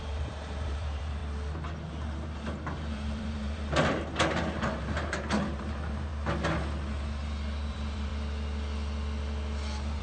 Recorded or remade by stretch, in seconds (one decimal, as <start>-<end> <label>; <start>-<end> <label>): 0.0-1.2 remade; 1.2-1.9 recorded; 1.9-6.1 remade; 6.1-7.7 recorded; 7.7-8.1 remade; 8.1-10.0 recorded